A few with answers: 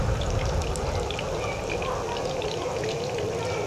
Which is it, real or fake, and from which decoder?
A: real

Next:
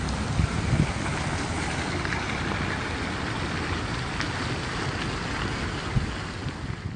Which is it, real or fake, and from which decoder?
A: real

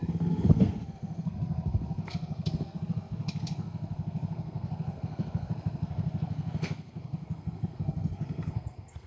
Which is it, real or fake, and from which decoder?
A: fake, codec, SNAC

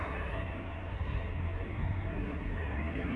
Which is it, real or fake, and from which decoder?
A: fake, codec, SNAC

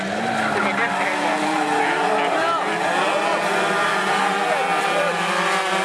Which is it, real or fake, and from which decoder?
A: real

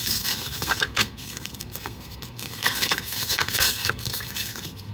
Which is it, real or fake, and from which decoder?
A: fake, codec, SNAC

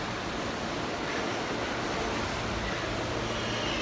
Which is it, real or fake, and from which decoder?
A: real